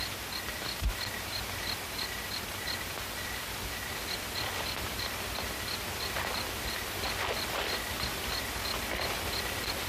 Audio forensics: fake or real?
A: real